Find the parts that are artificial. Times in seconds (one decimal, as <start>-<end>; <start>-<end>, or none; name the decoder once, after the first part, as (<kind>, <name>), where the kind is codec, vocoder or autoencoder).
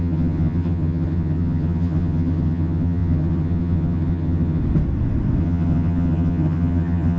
0.0-4.6 (vocoder, HiFi-GAN); 5.4-7.2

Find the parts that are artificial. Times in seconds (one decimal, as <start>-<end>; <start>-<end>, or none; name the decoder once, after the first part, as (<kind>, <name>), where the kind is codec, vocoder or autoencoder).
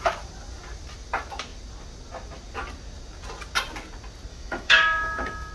4.3-5.5 (autoencoder, DAC-VAE)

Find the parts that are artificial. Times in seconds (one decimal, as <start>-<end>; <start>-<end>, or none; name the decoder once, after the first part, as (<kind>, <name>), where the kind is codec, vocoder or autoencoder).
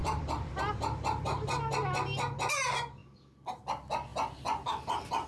0.0-0.6 (vocoder, BigVGAN v2)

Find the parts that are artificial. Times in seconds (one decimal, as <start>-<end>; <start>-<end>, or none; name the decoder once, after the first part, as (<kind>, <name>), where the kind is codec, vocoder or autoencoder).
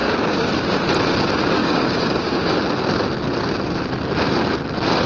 0.0-0.5 (codec, DAC); 1.6-2.5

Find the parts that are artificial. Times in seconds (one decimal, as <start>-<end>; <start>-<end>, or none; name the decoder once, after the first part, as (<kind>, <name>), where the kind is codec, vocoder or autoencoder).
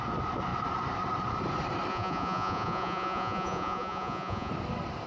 1.9-4.5 (vocoder, Vocos)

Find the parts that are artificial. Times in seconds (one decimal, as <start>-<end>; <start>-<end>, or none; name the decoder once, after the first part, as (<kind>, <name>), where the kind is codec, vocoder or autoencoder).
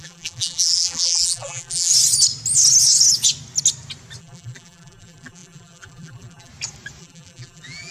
0.0-1.9 (vocoder, BigVGAN v2); 4.2-6.5; 7.0-7.9